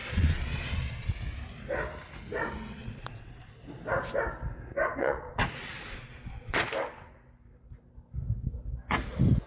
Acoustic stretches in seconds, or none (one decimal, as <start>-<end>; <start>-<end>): 1.1-2.7; 3.6-5.0; 6.7-9.5